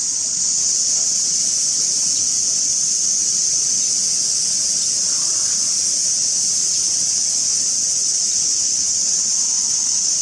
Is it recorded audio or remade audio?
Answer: recorded